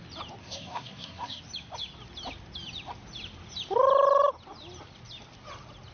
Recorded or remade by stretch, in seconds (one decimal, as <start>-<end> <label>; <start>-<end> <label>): 0.0-0.4 recorded; 0.4-1.4 remade; 1.4-5.9 recorded